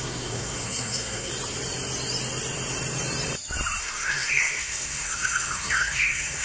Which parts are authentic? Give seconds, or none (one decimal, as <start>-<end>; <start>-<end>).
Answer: 1.3-3.8